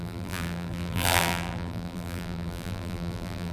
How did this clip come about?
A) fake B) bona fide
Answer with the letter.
A